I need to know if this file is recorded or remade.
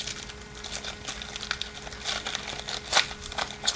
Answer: recorded